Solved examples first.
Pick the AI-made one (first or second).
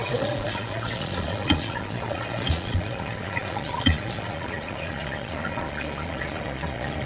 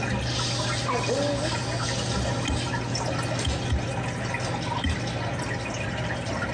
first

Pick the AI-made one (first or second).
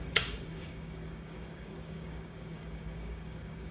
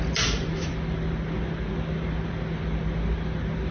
first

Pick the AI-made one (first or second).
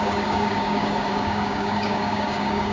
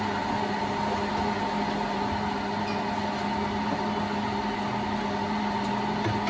first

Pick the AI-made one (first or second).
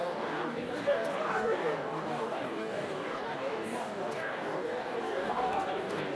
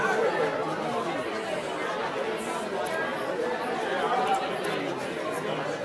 first